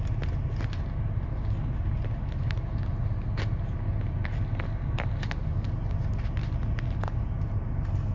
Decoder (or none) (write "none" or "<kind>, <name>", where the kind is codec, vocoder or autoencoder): none